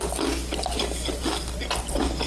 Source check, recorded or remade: recorded